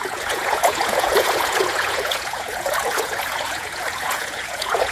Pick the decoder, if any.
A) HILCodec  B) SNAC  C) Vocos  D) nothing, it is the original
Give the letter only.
C